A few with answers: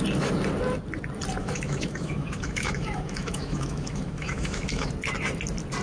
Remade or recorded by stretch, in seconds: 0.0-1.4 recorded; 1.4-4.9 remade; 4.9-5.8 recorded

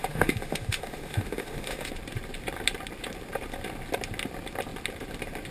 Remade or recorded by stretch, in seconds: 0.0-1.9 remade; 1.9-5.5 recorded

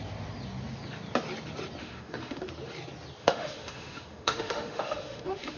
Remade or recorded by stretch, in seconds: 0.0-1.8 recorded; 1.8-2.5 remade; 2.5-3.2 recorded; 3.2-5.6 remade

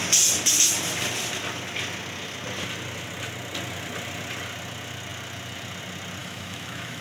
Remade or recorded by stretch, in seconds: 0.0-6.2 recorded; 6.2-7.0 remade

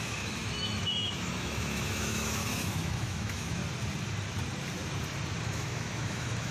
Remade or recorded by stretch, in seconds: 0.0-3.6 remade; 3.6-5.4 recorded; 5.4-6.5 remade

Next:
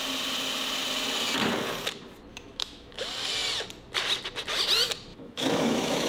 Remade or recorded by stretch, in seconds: 0.0-2.3 recorded; 2.3-3.0 remade; 3.0-5.1 recorded; 5.1-6.1 remade

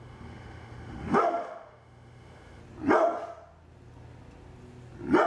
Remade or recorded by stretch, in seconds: 0.0-2.6 remade; 2.6-5.3 recorded